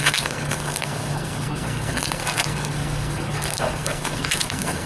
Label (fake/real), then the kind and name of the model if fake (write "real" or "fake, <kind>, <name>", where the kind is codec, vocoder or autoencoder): fake, codec, SNAC